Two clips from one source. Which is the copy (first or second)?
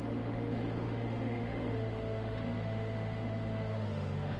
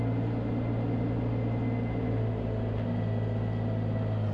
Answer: first